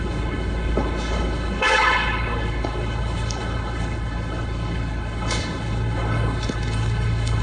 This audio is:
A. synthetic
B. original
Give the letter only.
A